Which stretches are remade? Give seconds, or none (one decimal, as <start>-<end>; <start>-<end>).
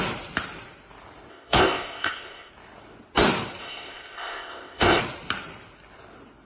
1.3-2.5; 3.6-5.0